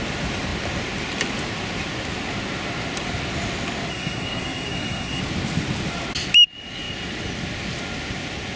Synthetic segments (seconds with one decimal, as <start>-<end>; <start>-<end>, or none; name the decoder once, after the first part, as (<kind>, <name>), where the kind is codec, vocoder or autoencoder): 3.9-5.2 (codec, SNAC)